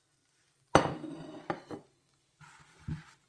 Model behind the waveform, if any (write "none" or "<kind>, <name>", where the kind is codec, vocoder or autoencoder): none